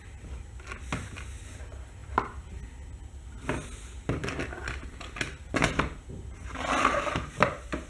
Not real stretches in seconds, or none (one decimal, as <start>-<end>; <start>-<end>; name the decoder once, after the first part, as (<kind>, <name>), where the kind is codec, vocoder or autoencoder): 2.0-2.6 (vocoder, BigVGAN v2); 4.2-6.0